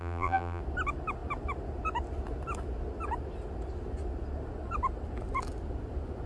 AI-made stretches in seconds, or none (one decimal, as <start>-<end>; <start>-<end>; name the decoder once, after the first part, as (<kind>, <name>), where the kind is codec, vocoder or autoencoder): 0.0-0.6 (vocoder, BigVGAN v2)